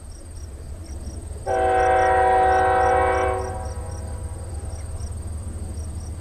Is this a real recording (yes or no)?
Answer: yes